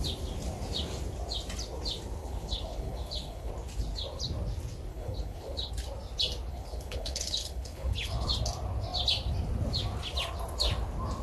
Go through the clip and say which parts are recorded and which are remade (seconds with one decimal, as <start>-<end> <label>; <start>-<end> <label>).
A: 0.0-2.2 recorded; 2.2-3.5 remade; 3.5-4.9 recorded; 4.9-5.7 remade; 5.7-6.5 recorded; 6.5-8.3 remade; 8.3-11.2 recorded